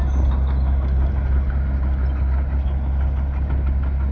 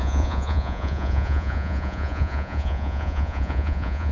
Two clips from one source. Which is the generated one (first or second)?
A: second